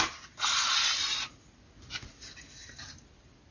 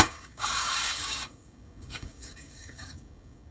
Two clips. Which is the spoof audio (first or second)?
second